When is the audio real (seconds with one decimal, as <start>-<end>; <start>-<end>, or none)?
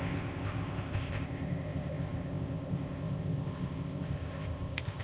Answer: none